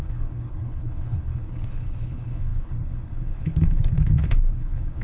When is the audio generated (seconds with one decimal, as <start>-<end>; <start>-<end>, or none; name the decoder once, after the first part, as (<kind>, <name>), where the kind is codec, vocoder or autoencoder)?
0.0-5.0 (codec, HILCodec)